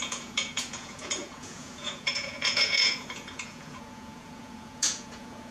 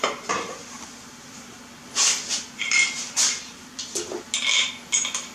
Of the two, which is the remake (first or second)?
first